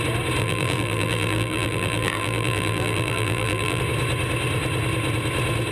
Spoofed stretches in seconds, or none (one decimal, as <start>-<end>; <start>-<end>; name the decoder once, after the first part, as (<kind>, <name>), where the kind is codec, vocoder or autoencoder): 0.4-3.8 (vocoder, BigVGAN v2)